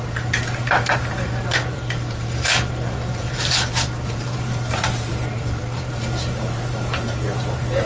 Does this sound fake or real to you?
fake